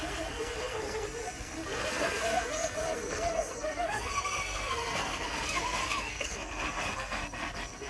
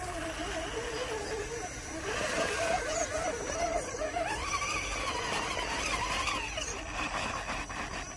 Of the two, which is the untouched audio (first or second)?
second